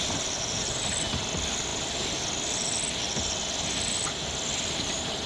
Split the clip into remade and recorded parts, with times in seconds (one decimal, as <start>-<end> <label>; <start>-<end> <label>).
0.0-5.3 recorded